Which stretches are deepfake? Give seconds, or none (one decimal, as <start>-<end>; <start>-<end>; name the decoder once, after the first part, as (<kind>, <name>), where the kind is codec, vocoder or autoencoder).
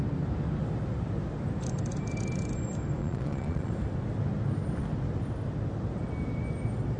3.0-3.7 (vocoder, Vocos)